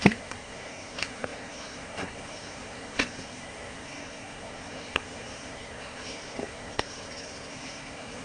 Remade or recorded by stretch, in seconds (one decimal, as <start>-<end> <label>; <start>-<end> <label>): 0.0-8.2 remade